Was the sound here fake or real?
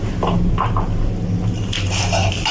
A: real